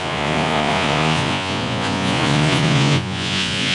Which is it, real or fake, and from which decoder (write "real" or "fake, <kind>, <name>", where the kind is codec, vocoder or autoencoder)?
fake, vocoder, Vocos